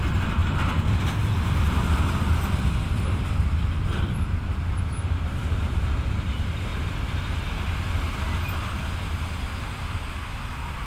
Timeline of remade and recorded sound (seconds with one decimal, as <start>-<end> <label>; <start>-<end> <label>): 0.0-10.9 recorded